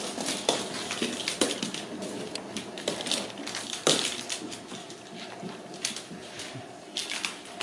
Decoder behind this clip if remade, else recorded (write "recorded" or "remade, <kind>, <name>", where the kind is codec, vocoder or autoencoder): remade, vocoder, BigVGAN v2